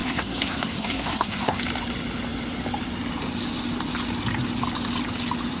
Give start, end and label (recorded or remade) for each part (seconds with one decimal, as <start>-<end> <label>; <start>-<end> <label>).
0.0-1.6 remade; 1.6-5.6 recorded